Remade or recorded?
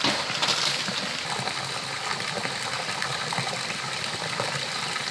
recorded